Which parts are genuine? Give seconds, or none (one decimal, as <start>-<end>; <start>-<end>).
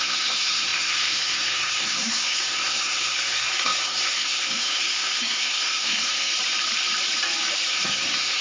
6.3-7.7